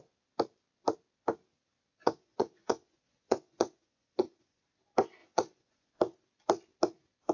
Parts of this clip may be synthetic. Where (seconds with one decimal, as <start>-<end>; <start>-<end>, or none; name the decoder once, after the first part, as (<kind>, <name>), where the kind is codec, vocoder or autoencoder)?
2.0-4.6 (vocoder, Vocos); 5.2-5.9